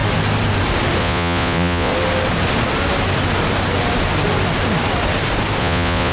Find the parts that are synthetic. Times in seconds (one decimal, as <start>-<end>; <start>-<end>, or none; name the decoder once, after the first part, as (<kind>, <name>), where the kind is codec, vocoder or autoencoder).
1.0-1.9 (vocoder, Vocos); 5.6-6.1